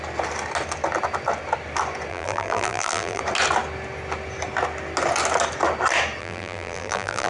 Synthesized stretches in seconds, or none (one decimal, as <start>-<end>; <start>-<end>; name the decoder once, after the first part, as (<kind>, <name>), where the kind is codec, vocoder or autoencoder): 2.1-3.2 (vocoder, BigVGAN v2); 6.2-7.3